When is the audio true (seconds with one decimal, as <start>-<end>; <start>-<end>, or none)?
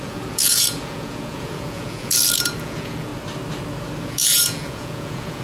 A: 3.1-4.0